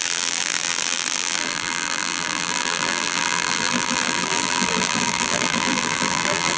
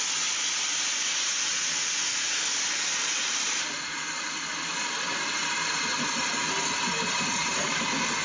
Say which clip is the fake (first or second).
first